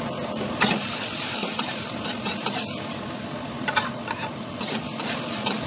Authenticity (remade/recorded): remade